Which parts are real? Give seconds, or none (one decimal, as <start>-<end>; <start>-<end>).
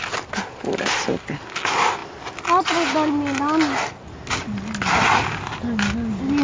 0.0-6.4